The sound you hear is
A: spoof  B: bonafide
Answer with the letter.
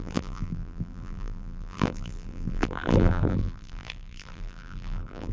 A